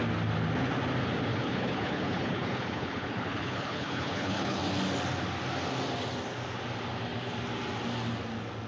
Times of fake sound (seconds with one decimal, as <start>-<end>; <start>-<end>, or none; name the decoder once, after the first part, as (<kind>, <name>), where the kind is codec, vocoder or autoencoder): 1.3-4.6 (codec, HILCodec)